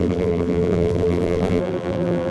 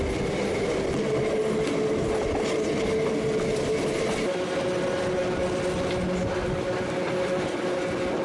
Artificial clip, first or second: first